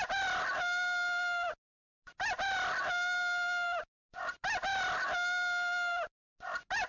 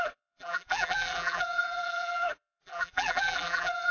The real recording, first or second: first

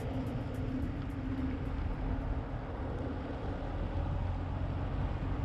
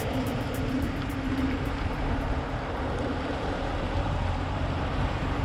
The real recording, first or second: first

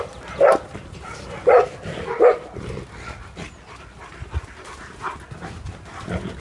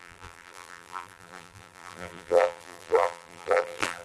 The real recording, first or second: first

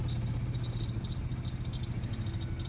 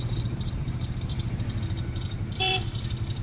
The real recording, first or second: first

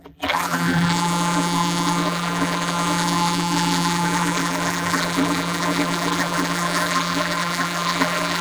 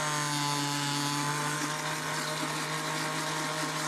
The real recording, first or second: second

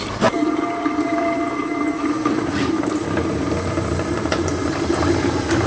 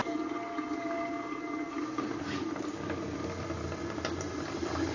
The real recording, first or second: second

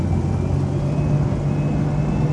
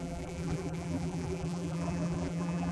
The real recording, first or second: first